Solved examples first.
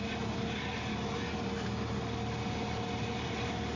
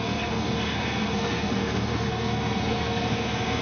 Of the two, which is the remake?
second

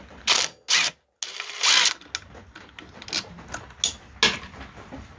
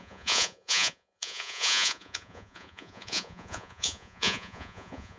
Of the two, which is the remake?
second